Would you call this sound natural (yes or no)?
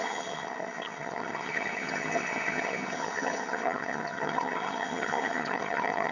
no